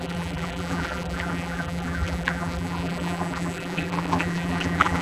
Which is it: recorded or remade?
remade